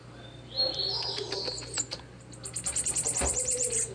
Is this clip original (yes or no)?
no